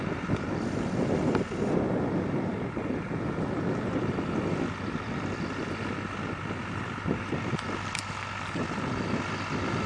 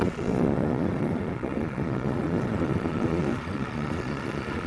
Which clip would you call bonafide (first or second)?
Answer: first